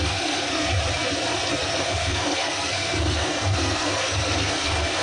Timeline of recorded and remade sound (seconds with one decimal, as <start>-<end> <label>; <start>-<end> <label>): 0.0-0.7 remade; 0.7-1.5 recorded; 1.5-5.0 remade